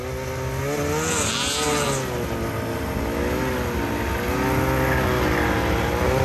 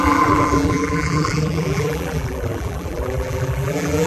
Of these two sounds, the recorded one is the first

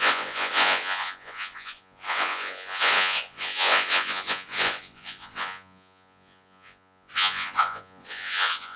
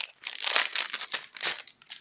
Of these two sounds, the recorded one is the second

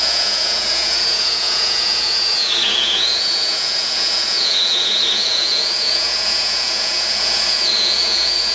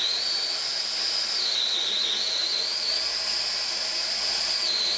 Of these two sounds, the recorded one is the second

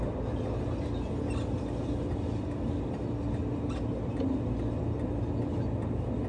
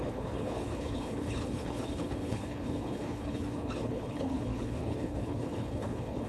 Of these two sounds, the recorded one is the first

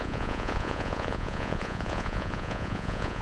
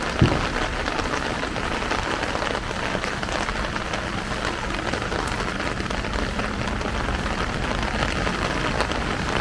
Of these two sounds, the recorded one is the second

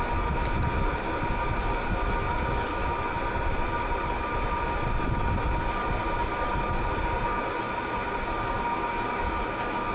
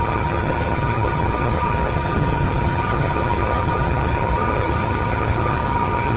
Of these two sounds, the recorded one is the first